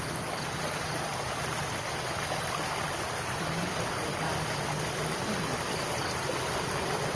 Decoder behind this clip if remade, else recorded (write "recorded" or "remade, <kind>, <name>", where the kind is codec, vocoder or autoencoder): recorded